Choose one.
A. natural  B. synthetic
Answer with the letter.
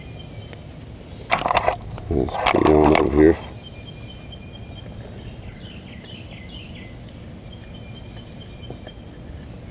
A